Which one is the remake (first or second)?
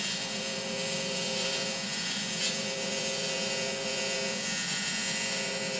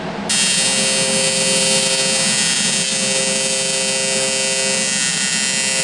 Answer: first